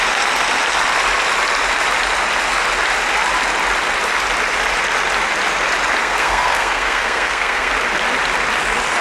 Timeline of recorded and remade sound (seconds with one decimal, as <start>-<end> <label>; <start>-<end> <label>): 0.0-6.0 recorded; 6.0-7.7 remade; 7.7-9.0 recorded